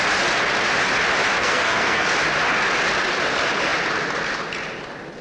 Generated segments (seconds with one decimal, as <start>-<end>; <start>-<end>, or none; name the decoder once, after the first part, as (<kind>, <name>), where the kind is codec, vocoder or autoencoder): 1.4-2.1 (codec, SNAC)